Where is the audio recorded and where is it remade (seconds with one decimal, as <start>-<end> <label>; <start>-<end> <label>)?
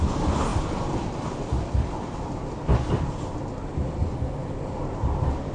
0.0-4.0 remade; 4.0-4.8 recorded; 4.8-5.5 remade